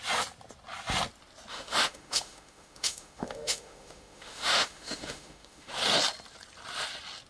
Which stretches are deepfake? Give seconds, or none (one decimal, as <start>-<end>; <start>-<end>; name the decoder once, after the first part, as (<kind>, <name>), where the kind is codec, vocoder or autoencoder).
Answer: 1.5-5.7 (autoencoder, DAC-VAE)